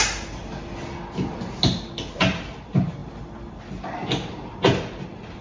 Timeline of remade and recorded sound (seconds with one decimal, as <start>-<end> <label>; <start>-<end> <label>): 0.0-5.4 recorded